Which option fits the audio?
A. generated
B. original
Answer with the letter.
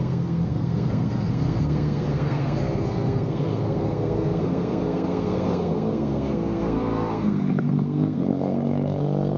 A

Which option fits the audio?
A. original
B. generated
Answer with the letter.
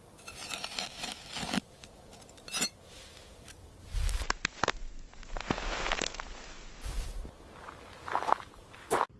A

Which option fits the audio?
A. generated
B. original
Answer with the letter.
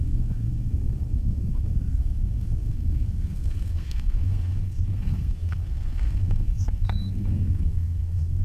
A